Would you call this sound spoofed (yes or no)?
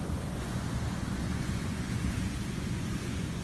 yes